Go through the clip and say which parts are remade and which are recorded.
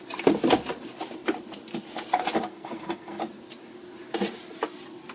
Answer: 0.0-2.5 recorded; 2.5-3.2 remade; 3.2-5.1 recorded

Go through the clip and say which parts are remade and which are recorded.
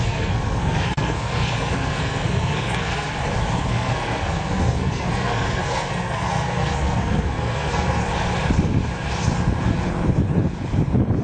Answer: 0.0-3.2 remade; 3.2-3.7 recorded; 3.7-8.0 remade; 8.0-11.2 recorded